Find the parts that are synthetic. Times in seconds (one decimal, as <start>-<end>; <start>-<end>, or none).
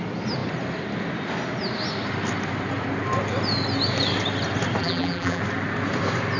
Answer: 4.8-5.4